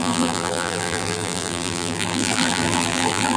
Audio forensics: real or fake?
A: fake